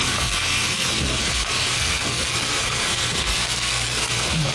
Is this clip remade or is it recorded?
remade